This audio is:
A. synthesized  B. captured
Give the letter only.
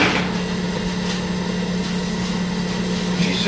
B